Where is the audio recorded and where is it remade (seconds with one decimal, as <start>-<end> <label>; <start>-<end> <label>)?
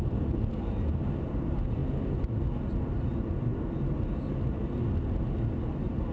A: 0.0-6.1 recorded